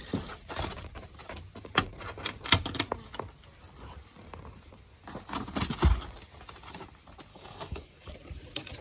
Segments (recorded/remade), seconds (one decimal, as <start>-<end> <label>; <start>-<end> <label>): 0.0-7.3 recorded; 7.3-8.1 remade; 8.1-8.8 recorded